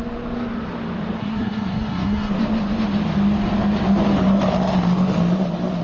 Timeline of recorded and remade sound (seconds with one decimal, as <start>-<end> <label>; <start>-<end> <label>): 0.0-1.2 recorded; 1.2-2.3 remade; 2.3-5.8 recorded